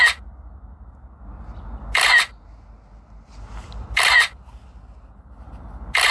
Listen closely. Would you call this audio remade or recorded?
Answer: recorded